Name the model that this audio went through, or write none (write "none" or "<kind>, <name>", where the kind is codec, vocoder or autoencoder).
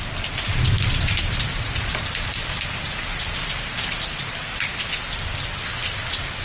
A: none